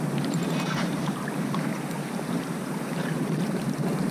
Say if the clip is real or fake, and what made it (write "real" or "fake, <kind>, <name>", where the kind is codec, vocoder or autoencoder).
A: fake, vocoder, BigVGAN v2